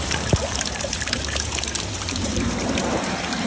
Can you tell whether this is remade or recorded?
remade